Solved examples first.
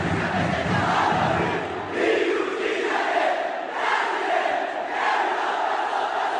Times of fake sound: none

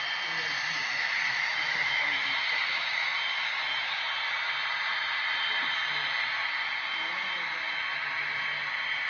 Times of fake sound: 0.8-4.1 (autoencoder, DAC-VAE)

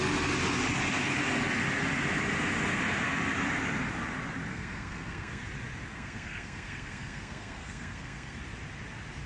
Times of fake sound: 4.5-5.4 (codec, SNAC); 5.9-8.4

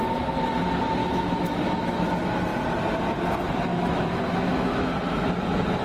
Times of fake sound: 1.0-2.1 (autoencoder, DAC-VAE); 3.7-4.9

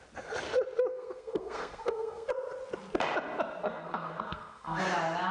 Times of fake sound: 0.9-2.3 (codec, SNAC); 3.6-4.8

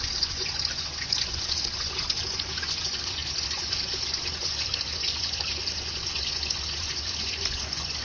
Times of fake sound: 0.0-8.0 (vocoder, Vocos)

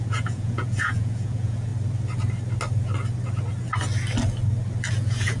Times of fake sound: 0.0-1.7 (vocoder, Vocos); 4.9-5.4

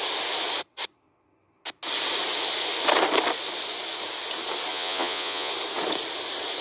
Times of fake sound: 4.7-5.5 (vocoder, Vocos)